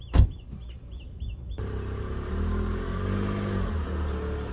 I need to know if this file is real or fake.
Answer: real